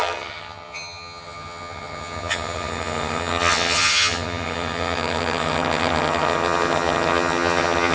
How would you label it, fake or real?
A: fake